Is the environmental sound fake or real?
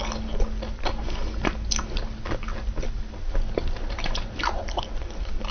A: real